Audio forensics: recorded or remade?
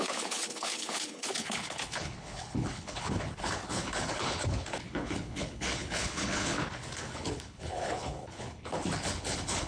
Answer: remade